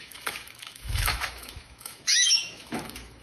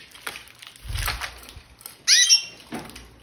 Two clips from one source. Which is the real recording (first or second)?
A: second